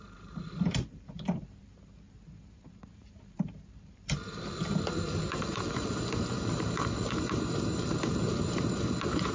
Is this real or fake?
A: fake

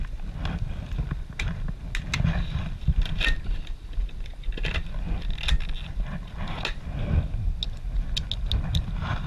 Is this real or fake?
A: real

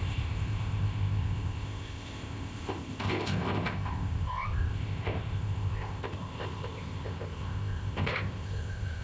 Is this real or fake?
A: fake